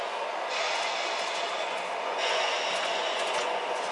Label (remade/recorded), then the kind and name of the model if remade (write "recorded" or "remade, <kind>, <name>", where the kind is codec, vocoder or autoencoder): remade, vocoder, Vocos